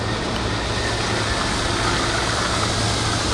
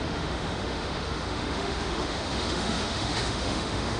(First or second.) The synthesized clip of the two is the second